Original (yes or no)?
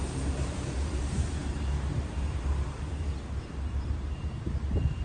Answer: no